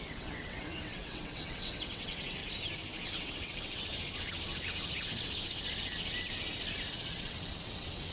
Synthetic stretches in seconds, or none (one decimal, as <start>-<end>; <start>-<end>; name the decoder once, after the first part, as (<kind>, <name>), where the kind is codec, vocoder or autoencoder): 0.0-2.4 (vocoder, WaveNeXt); 3.1-3.9; 6.9-8.1

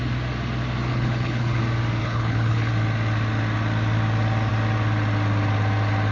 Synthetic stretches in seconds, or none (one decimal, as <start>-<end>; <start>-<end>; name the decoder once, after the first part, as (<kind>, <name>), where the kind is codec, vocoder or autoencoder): 0.9-1.6 (codec, HILCodec); 2.0-2.7

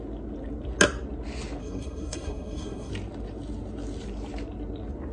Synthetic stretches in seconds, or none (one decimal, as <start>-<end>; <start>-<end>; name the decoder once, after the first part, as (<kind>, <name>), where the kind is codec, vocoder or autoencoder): 1.6-2.9 (codec, SNAC)

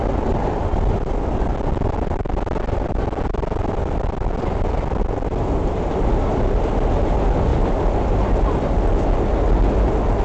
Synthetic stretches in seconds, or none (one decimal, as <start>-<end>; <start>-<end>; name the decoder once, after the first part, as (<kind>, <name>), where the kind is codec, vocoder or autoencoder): 0.7-1.2 (vocoder, BigVGAN v2); 7.5-8.1

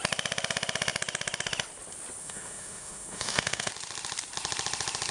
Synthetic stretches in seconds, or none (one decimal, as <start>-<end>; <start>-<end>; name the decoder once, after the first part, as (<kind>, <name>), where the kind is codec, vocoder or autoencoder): 2.2-3.7 (autoencoder, DAC-VAE)